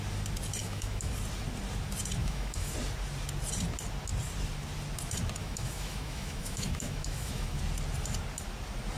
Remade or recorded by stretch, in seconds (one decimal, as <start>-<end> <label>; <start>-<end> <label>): 0.0-0.6 recorded; 0.6-1.1 remade; 1.1-2.2 recorded; 2.2-2.7 remade; 2.7-5.4 recorded; 5.4-7.6 remade; 7.6-9.0 recorded